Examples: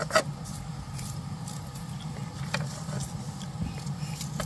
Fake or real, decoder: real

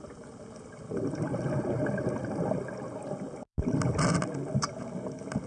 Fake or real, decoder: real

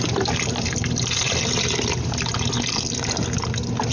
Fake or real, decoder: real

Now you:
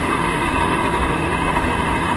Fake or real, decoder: fake, autoencoder, DAC-VAE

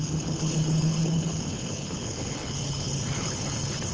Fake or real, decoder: fake, codec, HILCodec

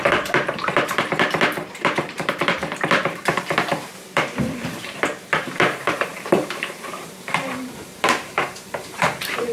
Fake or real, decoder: fake, vocoder, BigVGAN v2